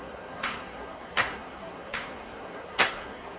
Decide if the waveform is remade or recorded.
remade